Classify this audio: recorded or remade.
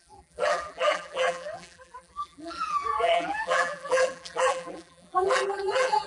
remade